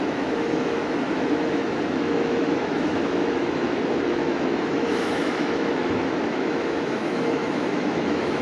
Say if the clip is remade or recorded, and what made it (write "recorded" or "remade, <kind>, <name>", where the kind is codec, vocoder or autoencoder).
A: remade, autoencoder, DAC-VAE